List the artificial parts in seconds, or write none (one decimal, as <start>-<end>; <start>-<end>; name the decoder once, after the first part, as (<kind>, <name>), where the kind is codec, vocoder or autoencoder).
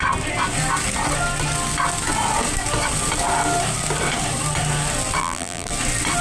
5.2-5.7 (vocoder, BigVGAN v2)